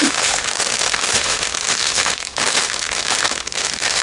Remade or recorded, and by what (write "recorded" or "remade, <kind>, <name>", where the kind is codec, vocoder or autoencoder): remade, autoencoder, DAC-VAE